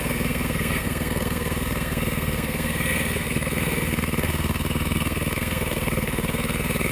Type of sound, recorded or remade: remade